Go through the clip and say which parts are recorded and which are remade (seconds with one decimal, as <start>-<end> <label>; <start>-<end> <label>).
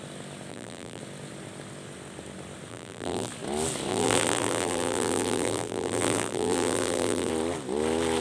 0.0-0.5 recorded; 0.5-1.0 remade; 1.0-2.7 recorded; 2.7-3.3 remade; 3.3-3.9 recorded; 3.9-7.3 remade; 7.3-8.2 recorded